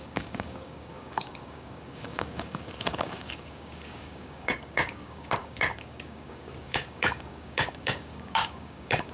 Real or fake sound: fake